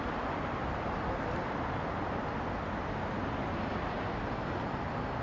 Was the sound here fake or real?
real